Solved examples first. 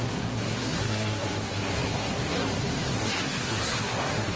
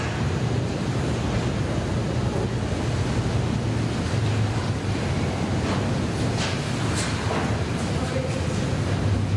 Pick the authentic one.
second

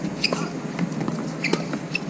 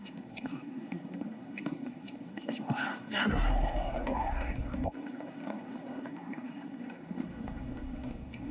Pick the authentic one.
first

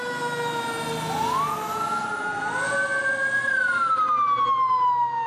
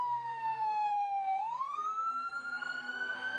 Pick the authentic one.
first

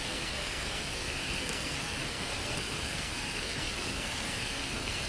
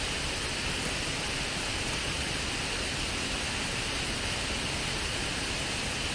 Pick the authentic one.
second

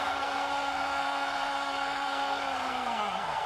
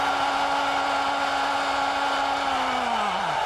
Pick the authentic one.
second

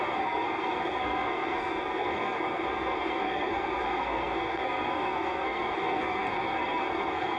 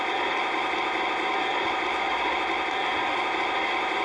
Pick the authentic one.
second